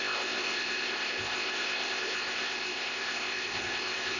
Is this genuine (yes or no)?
no